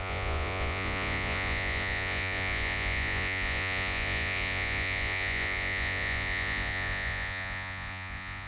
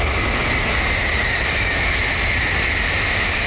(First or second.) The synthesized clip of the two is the first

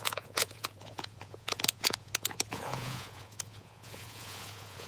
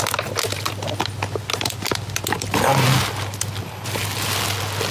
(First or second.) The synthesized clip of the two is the first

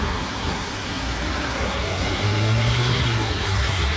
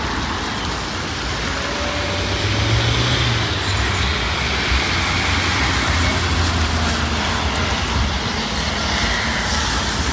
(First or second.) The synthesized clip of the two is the first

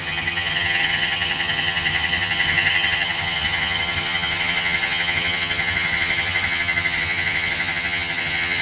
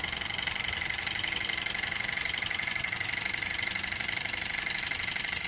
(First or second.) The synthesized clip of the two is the first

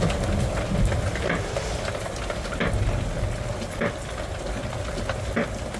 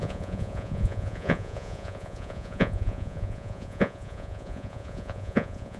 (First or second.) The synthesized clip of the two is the second